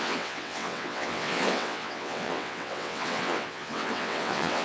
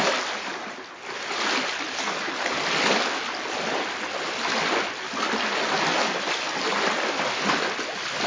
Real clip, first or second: second